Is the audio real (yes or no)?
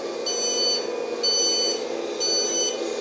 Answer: yes